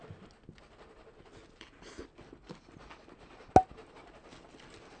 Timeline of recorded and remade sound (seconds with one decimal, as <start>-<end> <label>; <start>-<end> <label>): 0.0-5.0 recorded